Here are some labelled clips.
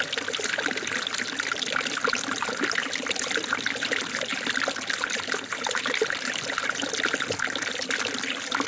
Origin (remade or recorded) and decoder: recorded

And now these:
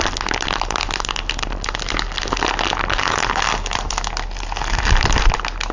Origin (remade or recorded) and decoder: recorded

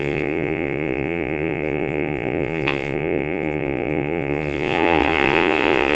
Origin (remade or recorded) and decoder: remade, vocoder, Vocos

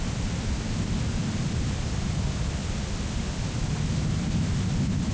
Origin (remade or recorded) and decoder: recorded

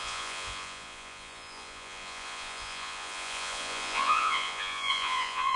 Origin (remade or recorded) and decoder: remade, vocoder, Vocos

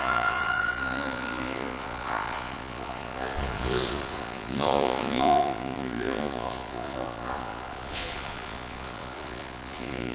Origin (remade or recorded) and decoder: remade, vocoder, Vocos